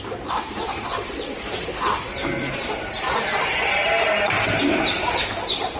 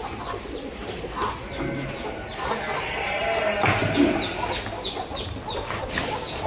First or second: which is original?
second